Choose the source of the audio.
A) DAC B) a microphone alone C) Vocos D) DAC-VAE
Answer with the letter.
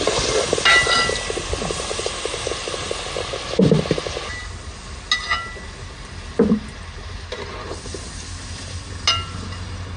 B